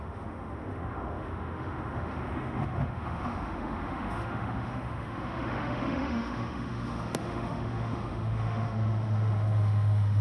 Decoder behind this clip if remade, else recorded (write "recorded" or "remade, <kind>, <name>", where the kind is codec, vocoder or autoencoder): remade, autoencoder, DAC-VAE